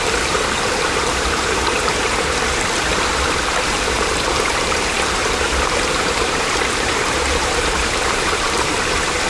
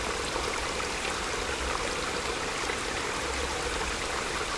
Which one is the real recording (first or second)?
second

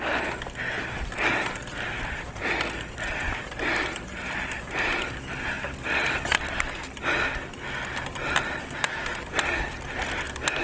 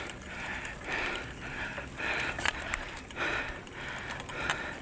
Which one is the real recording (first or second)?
first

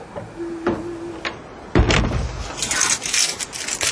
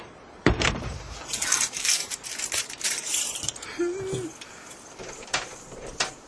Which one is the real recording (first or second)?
first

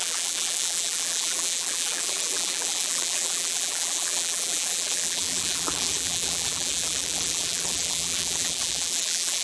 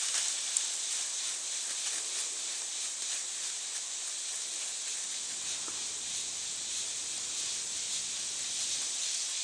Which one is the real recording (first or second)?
second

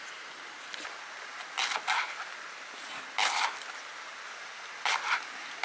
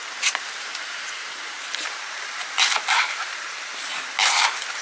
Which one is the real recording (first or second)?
first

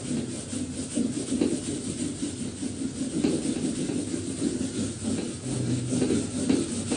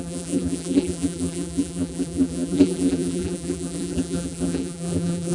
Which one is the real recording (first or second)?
first